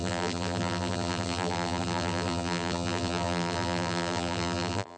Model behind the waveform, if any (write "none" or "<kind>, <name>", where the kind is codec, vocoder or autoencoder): vocoder, BigVGAN v2